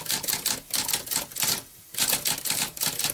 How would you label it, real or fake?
real